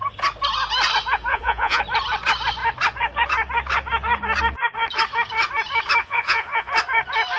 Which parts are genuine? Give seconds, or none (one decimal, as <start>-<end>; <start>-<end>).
0.0-1.3; 1.8-6.0; 6.7-7.4